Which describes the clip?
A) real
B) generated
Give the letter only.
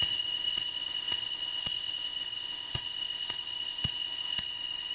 B